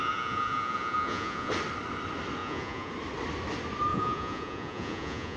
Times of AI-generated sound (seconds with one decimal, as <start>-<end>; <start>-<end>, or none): 0.0-1.5; 2.4-2.9; 3.9-5.4